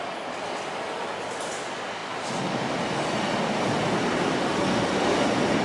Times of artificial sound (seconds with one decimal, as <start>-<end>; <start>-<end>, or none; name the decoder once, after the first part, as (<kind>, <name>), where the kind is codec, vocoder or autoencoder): none